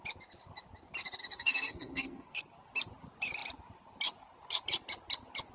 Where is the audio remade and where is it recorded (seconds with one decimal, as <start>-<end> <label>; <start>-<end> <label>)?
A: 0.0-1.2 recorded; 1.2-2.4 remade; 2.4-5.5 recorded

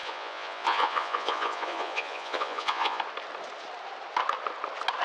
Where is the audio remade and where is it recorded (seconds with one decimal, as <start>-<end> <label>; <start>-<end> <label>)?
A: 0.0-3.0 remade; 3.0-5.0 recorded